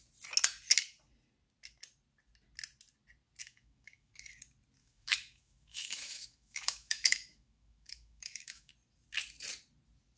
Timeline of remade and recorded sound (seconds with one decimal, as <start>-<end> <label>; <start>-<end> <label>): 0.0-3.4 recorded; 3.4-4.1 remade; 4.1-4.8 recorded; 4.8-8.7 remade; 8.7-10.2 recorded